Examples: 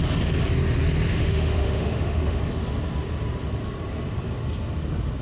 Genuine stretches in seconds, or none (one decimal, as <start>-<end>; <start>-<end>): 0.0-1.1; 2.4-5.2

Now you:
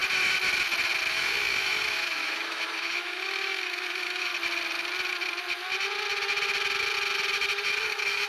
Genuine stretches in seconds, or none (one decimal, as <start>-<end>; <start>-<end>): 0.0-1.1; 4.3-7.8

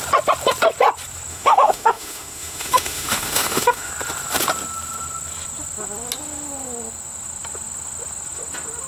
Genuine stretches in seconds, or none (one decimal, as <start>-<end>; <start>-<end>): 0.0-1.3; 3.9-8.9